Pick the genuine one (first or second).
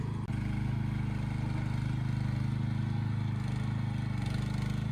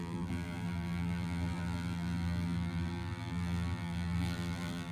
first